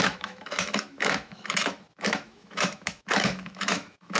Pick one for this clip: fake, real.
fake